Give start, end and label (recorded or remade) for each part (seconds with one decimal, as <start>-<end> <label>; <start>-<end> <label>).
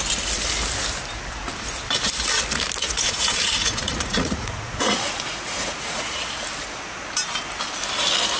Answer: 0.0-2.8 recorded; 2.8-6.3 remade; 6.3-8.4 recorded